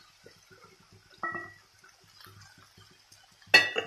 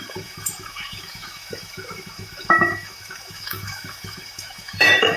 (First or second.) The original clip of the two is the first